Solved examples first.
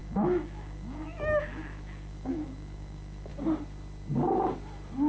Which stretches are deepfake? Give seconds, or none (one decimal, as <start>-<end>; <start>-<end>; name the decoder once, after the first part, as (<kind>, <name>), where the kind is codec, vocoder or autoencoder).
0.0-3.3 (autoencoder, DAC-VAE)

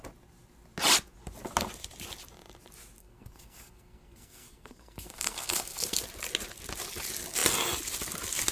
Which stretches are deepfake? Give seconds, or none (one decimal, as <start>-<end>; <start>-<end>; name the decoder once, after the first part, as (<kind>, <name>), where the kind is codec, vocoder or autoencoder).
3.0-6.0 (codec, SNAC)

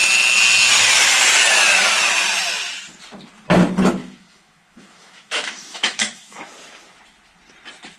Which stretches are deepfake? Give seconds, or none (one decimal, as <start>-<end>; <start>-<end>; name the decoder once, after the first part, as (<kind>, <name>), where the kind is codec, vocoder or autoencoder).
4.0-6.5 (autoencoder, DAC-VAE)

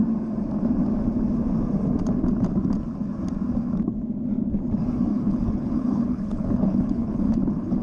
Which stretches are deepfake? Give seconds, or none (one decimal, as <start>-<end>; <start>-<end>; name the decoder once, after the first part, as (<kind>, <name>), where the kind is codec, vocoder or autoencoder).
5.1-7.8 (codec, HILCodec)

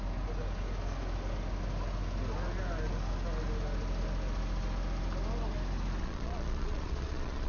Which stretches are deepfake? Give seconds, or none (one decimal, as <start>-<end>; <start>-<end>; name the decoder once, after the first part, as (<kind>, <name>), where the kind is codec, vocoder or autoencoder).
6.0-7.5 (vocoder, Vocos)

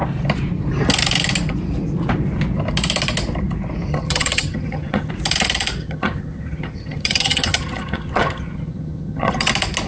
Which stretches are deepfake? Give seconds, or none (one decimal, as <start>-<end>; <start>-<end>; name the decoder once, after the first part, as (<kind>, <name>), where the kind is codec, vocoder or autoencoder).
3.9-5.1 (vocoder, HiFi-GAN); 5.8-9.5

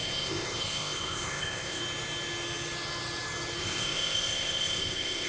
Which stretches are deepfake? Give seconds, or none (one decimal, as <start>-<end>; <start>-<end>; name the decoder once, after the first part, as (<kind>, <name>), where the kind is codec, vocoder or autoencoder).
0.0-1.8 (codec, ZipCodec); 3.6-5.3